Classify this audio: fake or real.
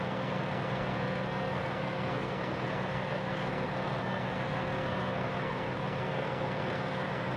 fake